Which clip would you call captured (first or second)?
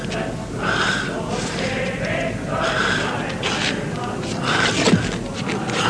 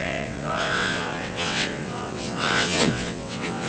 first